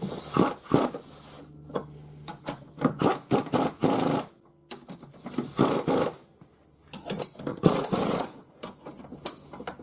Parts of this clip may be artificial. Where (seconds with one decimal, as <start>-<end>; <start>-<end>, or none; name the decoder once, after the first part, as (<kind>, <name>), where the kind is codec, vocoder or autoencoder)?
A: 7.5-8.6 (vocoder, Vocos)